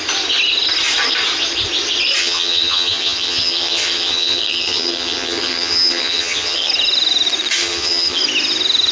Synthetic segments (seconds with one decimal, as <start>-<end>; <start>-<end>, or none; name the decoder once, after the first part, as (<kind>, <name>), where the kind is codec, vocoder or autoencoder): 2.2-6.7 (vocoder, HiFi-GAN); 7.6-8.2